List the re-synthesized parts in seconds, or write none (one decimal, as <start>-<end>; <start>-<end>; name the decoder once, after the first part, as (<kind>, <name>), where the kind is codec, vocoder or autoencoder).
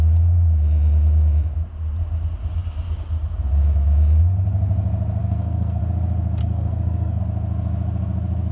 5.2-5.8 (codec, SNAC); 6.4-7.2